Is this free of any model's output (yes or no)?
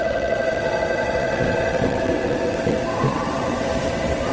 no